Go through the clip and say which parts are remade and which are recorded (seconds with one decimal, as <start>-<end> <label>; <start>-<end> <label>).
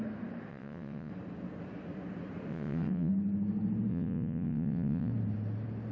0.0-0.5 recorded; 0.5-1.1 remade; 1.1-2.5 recorded; 2.5-3.1 remade; 3.1-3.9 recorded; 3.9-5.1 remade; 5.1-5.9 recorded